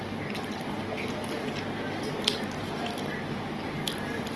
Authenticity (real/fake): real